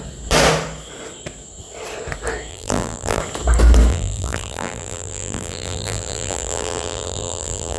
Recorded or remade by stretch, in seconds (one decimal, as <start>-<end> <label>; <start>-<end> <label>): 0.0-2.5 recorded; 2.5-3.2 remade; 3.2-3.9 recorded; 3.9-7.8 remade